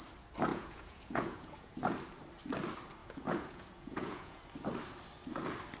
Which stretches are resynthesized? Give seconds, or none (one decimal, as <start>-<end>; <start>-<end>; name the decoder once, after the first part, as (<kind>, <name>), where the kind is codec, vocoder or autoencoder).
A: 0.5-1.7 (vocoder, Vocos); 3.0-4.4